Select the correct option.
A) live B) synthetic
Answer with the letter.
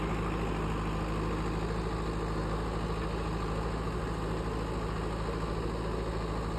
A